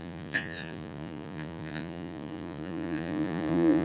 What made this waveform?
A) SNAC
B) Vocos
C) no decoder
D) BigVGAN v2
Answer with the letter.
B